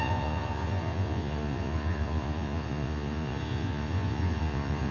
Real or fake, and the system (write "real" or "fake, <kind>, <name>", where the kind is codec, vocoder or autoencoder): fake, vocoder, Vocos